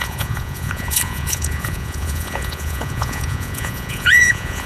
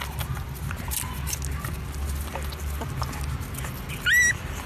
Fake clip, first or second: first